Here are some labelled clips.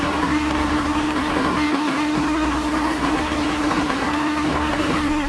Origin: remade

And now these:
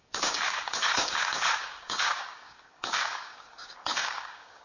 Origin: remade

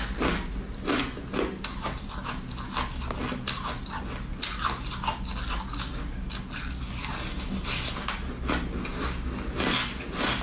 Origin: recorded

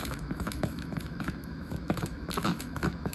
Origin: remade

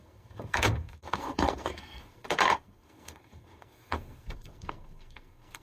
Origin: remade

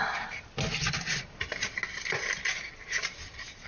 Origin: recorded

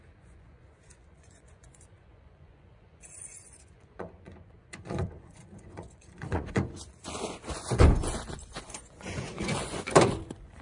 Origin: remade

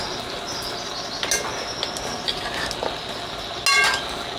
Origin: recorded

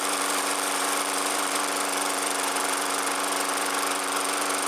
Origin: remade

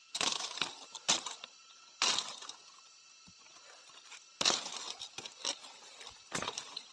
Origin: recorded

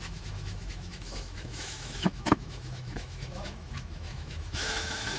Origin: remade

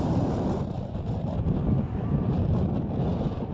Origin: recorded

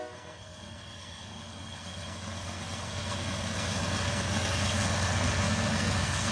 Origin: remade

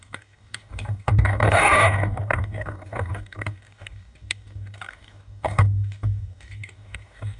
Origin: remade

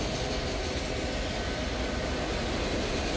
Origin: recorded